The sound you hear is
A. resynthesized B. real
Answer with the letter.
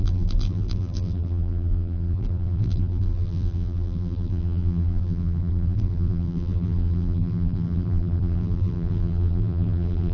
A